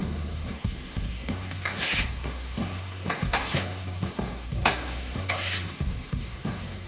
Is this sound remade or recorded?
remade